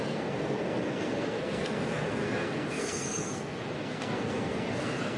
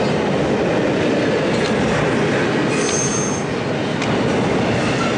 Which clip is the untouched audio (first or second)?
second